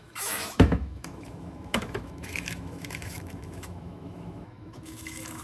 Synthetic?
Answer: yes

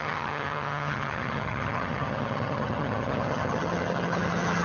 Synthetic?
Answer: yes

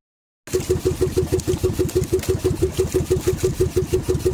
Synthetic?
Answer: no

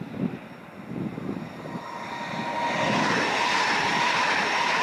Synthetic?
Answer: no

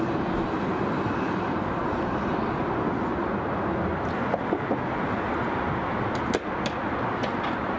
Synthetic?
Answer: no